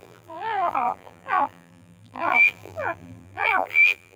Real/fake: fake